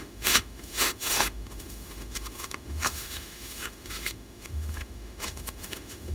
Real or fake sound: fake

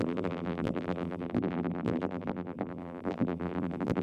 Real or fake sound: fake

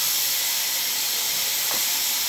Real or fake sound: real